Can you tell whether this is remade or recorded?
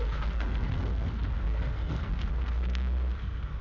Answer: remade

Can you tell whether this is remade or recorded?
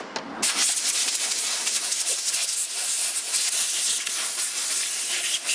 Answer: recorded